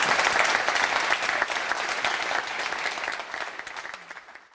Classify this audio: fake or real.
real